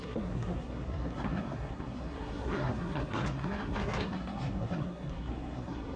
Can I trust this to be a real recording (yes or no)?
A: no